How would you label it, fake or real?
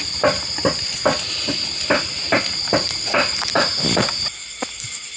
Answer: real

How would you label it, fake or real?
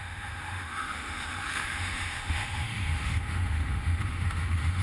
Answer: fake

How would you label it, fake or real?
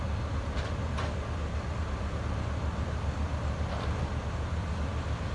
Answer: real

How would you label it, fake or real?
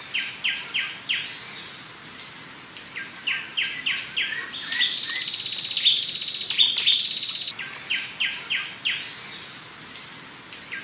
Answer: real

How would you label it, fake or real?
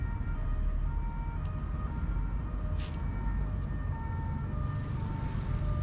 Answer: real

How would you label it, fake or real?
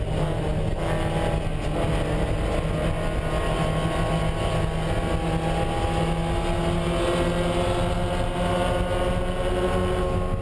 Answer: real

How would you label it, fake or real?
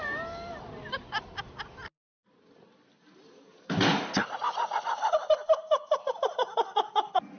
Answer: real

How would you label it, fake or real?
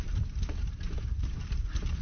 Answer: real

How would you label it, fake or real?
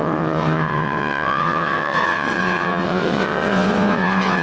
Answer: fake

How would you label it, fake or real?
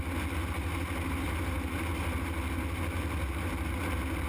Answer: real